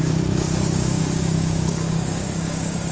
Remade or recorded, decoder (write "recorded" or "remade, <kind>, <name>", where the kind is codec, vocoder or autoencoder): remade, codec, DAC